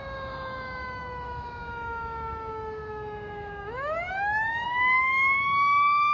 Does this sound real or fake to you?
fake